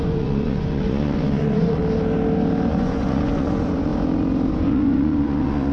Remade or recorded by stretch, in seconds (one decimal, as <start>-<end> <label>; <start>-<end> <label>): 0.0-1.8 remade; 1.8-2.7 recorded; 2.7-3.9 remade; 3.9-4.5 recorded; 4.5-5.7 remade